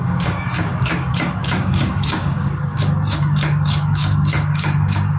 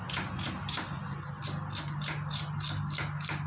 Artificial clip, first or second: first